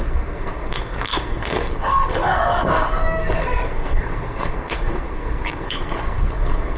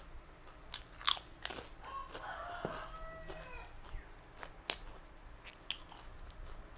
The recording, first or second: second